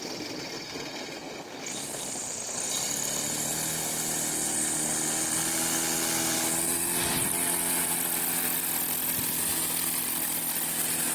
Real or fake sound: real